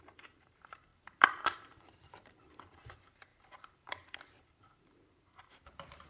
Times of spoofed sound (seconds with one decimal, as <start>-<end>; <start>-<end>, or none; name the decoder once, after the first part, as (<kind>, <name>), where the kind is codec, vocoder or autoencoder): 0.0-6.1 (vocoder, BigVGAN v2)